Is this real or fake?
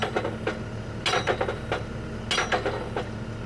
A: real